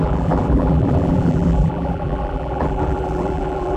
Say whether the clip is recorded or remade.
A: remade